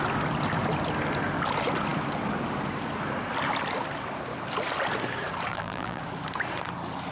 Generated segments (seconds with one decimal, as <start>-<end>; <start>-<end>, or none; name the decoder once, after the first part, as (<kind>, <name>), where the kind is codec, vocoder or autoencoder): 5.5-6.0 (vocoder, BigVGAN v2)